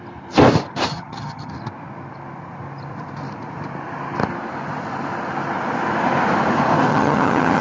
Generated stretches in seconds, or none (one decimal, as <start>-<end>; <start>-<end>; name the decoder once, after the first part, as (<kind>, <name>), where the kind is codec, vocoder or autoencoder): 0.9-1.5 (vocoder, HiFi-GAN); 6.9-7.6